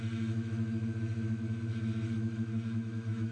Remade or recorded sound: remade